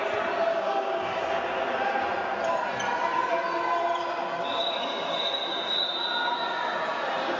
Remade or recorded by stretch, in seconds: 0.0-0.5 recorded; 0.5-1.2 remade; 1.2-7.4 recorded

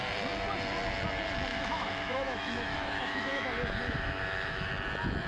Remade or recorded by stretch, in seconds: 0.0-1.5 recorded; 1.5-4.7 remade; 4.7-5.3 recorded